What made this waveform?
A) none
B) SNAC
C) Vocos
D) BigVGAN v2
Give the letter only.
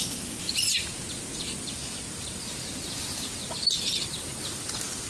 A